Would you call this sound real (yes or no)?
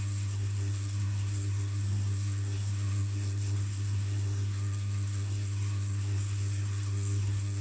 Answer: no